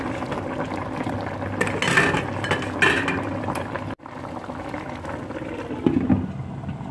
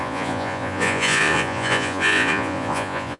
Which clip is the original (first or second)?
first